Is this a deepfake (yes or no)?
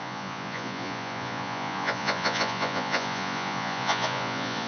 yes